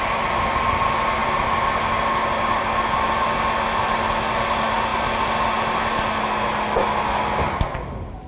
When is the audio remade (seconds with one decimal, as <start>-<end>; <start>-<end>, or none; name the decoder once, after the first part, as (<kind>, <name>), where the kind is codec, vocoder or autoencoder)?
none